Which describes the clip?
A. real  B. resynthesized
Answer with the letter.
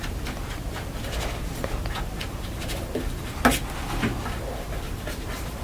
A